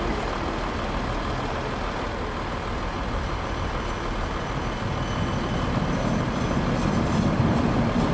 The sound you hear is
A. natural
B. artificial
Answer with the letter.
A